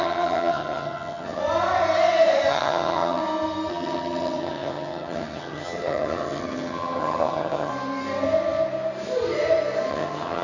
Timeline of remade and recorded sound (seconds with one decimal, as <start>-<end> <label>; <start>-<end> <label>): 0.0-1.4 remade; 1.4-2.5 recorded; 2.5-3.2 remade; 3.2-3.7 recorded; 3.7-7.7 remade; 7.7-9.9 recorded; 9.9-10.4 remade